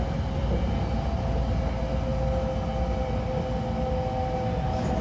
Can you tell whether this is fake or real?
real